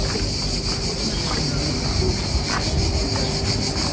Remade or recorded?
recorded